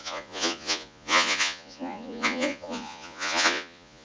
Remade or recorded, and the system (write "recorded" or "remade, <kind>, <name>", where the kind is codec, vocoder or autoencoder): remade, vocoder, Vocos